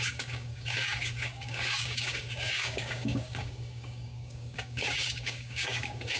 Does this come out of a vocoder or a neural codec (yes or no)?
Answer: yes